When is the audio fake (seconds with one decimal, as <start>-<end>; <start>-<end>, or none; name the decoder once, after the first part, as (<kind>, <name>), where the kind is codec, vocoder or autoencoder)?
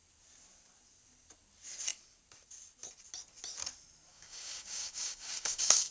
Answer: 4.1-5.9 (codec, DAC)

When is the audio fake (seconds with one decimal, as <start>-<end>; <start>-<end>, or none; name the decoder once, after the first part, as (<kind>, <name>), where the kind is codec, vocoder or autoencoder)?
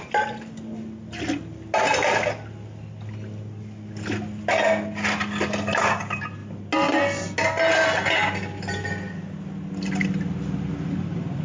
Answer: none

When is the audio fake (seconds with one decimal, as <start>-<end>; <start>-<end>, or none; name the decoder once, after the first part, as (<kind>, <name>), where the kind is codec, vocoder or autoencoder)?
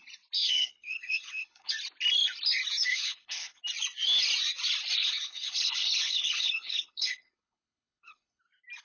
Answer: 0.4-1.7 (codec, HILCodec); 2.9-3.6; 5.0-8.4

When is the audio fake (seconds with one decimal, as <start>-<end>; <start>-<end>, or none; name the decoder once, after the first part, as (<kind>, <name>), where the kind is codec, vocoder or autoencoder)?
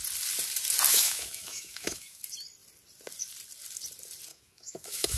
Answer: 0.9-2.2 (autoencoder, DAC-VAE); 4.3-5.2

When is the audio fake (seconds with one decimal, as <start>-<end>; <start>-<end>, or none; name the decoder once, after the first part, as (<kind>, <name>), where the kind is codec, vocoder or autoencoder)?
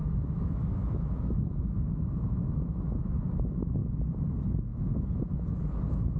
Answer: 0.0-3.8 (autoencoder, DAC-VAE); 4.3-6.2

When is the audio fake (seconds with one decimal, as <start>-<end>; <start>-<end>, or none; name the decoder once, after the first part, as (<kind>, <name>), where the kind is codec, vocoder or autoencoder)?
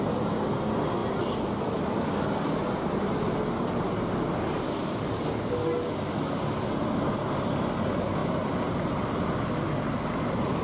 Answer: none